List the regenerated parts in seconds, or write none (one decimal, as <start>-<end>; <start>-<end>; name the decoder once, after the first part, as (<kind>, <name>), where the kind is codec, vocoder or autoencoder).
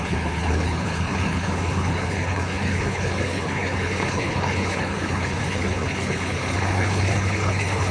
0.0-7.9 (codec, HILCodec)